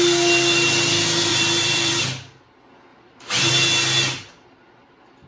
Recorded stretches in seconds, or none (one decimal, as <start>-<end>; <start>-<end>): 0.0-1.3; 2.0-2.9; 3.5-5.3